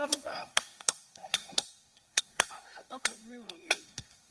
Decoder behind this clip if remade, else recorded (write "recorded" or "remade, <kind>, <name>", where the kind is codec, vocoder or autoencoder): remade, codec, SNAC